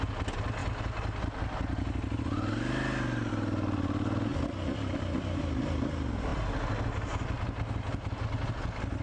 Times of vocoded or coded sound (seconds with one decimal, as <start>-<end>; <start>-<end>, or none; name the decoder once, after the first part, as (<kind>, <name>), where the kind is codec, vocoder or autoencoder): none